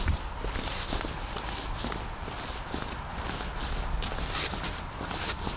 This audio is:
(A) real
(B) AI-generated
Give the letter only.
A